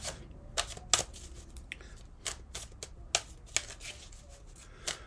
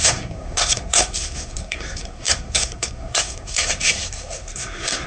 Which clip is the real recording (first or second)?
first